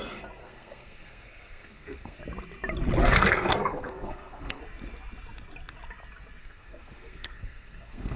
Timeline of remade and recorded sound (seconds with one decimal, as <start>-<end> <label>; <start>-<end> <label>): 0.0-0.4 recorded; 0.4-2.2 remade; 2.2-3.0 recorded; 3.0-4.6 remade; 4.6-6.4 recorded; 6.4-8.2 remade